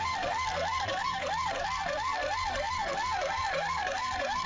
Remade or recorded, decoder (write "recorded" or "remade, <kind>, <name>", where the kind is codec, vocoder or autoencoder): remade, codec, SNAC